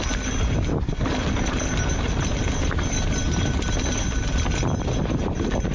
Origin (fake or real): real